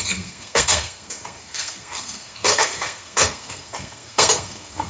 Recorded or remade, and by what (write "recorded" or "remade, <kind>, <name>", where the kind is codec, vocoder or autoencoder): remade, codec, SNAC